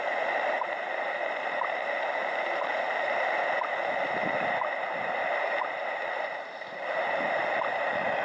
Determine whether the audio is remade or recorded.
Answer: remade